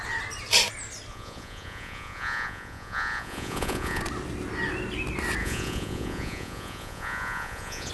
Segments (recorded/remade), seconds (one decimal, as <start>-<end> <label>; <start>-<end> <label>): 0.0-1.1 recorded; 1.1-4.0 remade; 4.0-5.4 recorded; 5.4-7.9 remade